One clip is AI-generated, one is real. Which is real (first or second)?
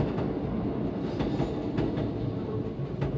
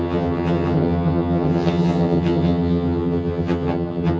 first